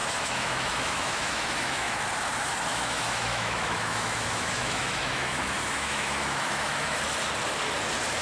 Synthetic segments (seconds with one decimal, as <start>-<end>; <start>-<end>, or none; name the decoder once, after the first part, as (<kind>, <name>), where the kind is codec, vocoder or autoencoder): 0.0-2.0 (autoencoder, DAC-VAE); 2.7-7.0